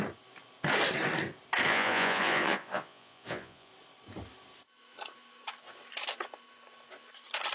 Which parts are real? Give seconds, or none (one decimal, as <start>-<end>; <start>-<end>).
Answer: 0.0-1.7; 3.7-7.5